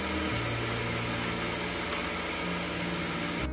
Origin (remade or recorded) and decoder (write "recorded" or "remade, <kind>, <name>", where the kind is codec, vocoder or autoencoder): recorded